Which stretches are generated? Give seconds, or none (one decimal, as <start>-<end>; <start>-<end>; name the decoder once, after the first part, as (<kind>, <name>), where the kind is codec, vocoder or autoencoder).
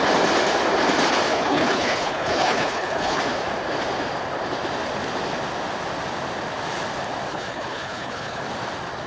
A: 1.3-3.2 (codec, HILCodec); 7.3-8.4